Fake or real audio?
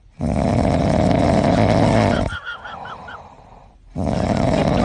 real